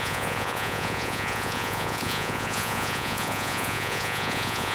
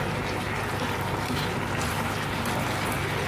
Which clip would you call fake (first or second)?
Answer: first